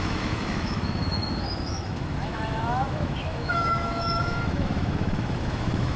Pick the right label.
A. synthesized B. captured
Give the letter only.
A